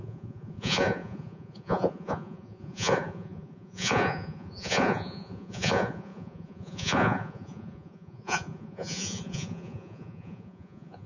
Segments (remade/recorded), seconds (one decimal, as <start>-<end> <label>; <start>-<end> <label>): 0.0-11.1 remade